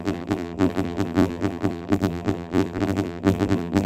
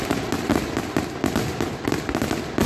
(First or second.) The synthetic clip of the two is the first